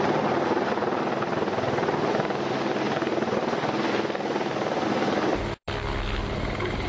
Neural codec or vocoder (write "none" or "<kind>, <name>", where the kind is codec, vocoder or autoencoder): none